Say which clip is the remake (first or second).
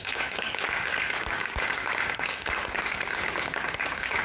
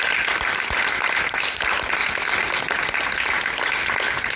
first